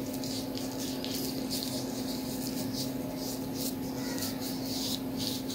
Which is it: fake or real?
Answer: real